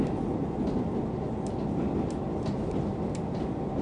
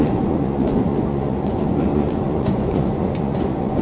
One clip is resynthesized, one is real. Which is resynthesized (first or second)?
second